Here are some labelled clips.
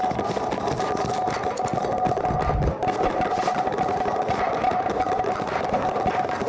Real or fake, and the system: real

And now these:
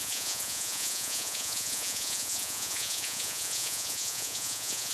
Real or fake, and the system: fake, vocoder, Vocos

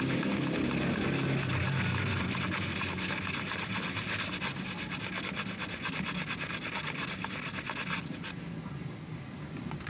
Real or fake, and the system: real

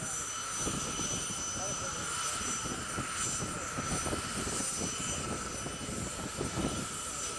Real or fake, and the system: real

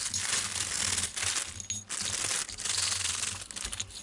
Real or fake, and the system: real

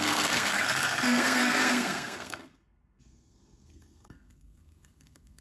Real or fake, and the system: fake, codec, SNAC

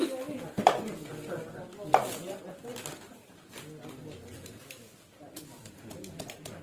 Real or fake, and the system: real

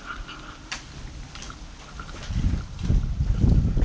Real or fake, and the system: real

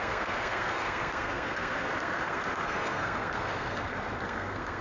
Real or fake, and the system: fake, codec, SNAC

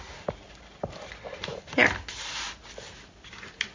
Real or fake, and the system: real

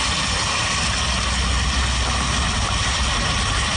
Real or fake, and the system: real